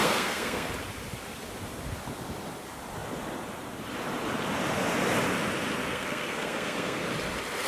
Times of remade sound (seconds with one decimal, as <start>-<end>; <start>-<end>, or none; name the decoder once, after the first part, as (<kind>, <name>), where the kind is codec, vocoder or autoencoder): 0.0-0.7 (codec, SNAC); 5.9-7.0